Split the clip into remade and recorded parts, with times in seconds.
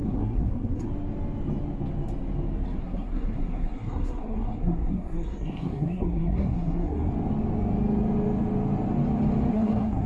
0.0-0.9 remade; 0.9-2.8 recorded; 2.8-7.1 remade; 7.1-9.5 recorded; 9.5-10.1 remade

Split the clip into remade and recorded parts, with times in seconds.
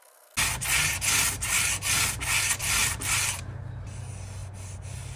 0.0-2.8 recorded; 2.8-3.4 remade; 3.4-5.2 recorded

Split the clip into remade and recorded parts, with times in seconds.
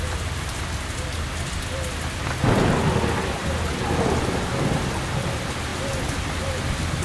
0.0-7.0 recorded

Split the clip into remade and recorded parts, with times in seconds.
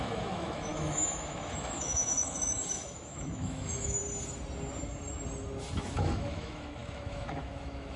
0.0-4.0 remade; 4.0-5.9 recorded; 5.9-8.0 remade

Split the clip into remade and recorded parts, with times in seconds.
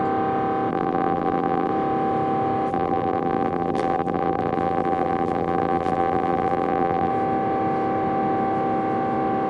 0.0-0.7 recorded; 0.7-1.7 remade; 1.7-2.7 recorded; 2.7-7.1 remade; 7.1-9.5 recorded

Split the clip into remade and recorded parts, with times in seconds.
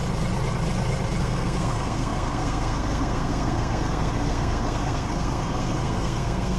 0.0-1.2 recorded; 1.2-6.6 remade